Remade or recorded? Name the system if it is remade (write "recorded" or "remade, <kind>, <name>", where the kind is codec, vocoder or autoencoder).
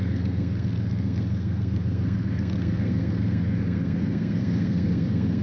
remade, codec, SNAC